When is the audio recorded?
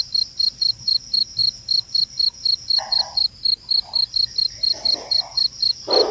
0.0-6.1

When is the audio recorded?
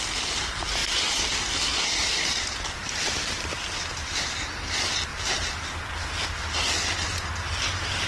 0.0-2.0; 4.5-8.1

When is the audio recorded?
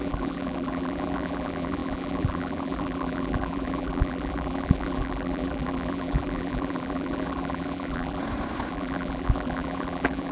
8.2-8.7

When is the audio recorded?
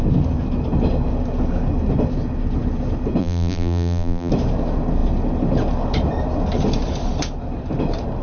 0.0-3.2; 4.3-8.2